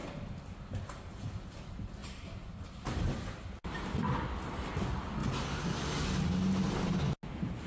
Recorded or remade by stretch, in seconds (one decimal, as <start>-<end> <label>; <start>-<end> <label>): 0.0-2.0 recorded; 2.0-3.7 remade; 3.7-7.7 recorded